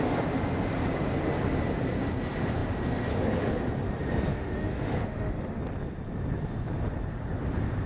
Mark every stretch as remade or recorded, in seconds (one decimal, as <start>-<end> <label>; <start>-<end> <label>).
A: 0.0-4.3 recorded; 4.3-5.6 remade; 5.6-7.9 recorded